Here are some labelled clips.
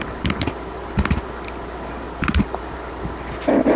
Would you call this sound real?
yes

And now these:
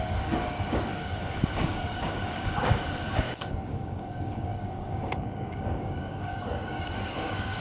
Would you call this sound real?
no